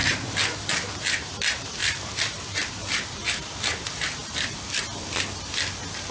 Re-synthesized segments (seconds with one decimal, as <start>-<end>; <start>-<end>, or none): none